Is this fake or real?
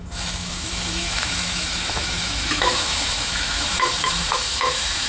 fake